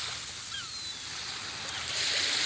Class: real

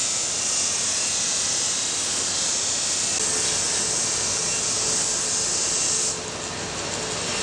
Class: real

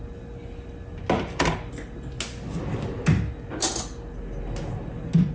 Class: real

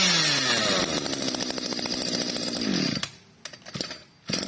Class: real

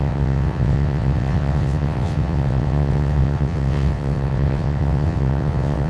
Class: fake